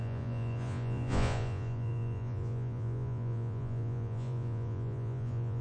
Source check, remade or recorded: remade